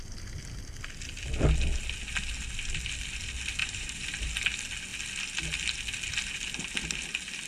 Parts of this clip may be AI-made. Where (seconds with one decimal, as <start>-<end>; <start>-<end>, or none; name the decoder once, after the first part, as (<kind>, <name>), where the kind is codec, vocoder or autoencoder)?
3.6-4.3 (vocoder, BigVGAN v2)